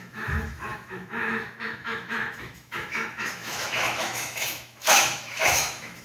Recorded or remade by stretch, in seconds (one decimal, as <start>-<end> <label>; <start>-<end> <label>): 0.0-6.0 remade